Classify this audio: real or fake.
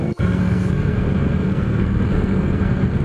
fake